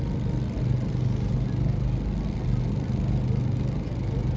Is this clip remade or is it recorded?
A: recorded